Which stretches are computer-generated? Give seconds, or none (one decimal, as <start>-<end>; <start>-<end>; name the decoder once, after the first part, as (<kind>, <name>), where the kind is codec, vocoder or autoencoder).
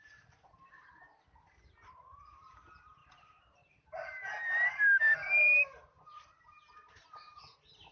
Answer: none